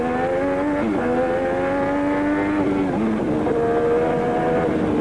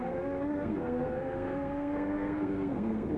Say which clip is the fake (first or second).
second